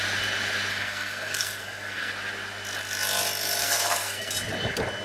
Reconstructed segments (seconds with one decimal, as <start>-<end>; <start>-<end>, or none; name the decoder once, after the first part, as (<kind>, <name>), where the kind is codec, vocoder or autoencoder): 0.7-2.1 (codec, SNAC); 3.6-4.3